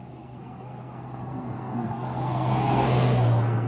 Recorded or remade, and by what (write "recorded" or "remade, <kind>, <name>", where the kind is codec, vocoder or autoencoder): remade, codec, SNAC